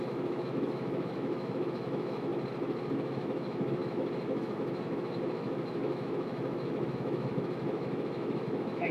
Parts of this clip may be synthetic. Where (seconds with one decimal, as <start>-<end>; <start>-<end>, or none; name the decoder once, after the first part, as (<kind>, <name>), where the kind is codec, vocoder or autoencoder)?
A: 0.0-2.3 (autoencoder, DAC-VAE); 2.9-8.9